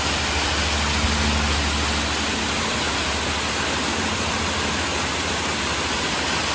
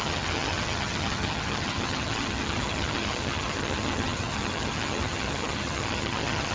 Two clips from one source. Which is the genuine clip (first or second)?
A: first